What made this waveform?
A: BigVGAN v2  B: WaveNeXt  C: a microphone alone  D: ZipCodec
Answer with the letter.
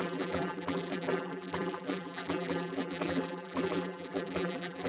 A